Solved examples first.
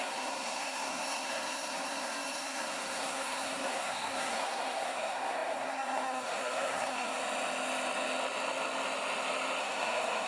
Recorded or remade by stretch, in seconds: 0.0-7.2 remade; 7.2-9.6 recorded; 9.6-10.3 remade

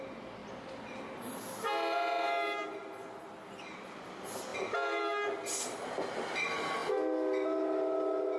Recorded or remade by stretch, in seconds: 0.0-8.4 recorded

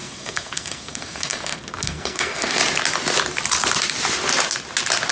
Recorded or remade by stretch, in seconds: 0.0-2.6 remade; 2.6-5.1 recorded

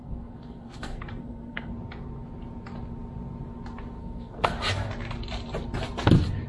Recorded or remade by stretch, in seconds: 0.0-1.7 remade; 1.7-4.0 recorded; 4.0-4.6 remade; 4.6-6.5 recorded

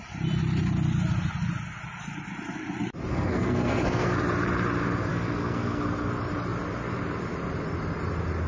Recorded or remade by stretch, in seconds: 0.0-3.1 recorded; 3.1-4.2 remade; 4.2-5.1 recorded; 5.1-5.8 remade; 5.8-8.5 recorded

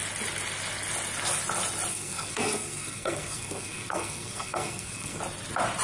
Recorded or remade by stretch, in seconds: 0.0-1.9 recorded; 1.9-5.2 remade; 5.2-5.8 recorded

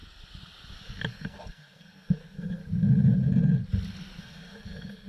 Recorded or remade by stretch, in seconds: 0.0-1.1 recorded; 1.1-2.6 remade; 2.6-4.2 recorded; 4.2-5.1 remade